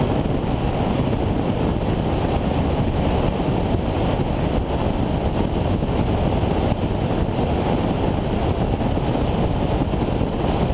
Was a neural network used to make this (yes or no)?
no